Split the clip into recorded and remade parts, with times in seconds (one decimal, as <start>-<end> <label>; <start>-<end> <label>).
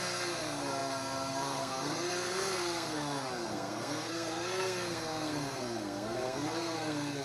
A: 0.0-7.2 remade